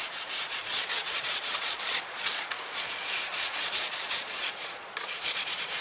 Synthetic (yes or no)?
yes